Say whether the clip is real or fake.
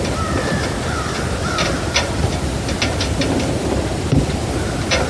real